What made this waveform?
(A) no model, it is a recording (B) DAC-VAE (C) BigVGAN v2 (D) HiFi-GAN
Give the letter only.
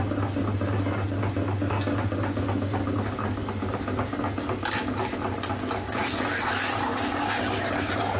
A